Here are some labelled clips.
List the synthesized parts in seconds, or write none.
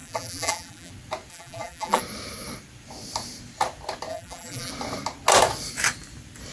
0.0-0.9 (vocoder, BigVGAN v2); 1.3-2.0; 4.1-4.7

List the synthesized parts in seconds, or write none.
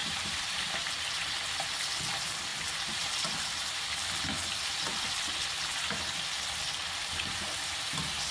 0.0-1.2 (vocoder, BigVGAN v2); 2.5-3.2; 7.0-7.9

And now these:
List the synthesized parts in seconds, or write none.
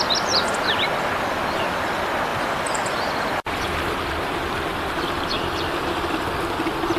2.3-4.1 (vocoder, BigVGAN v2); 4.7-6.3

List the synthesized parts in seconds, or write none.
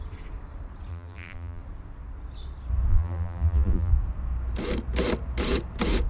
0.9-1.6 (vocoder, BigVGAN v2); 2.9-3.9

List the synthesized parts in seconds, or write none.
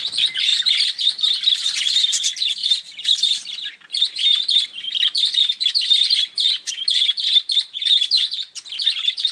0.5-1.6 (vocoder, BigVGAN v2); 2.6-6.7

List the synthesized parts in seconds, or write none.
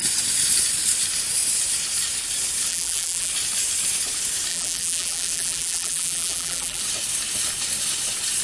2.7-3.3 (vocoder, BigVGAN v2); 4.5-6.8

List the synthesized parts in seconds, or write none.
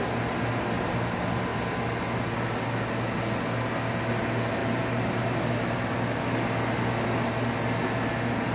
4.6-5.4 (vocoder, BigVGAN v2)